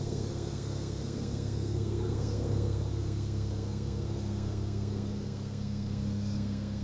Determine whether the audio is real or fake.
fake